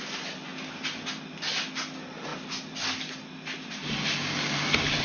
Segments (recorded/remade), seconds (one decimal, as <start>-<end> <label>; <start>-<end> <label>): 0.0-5.0 recorded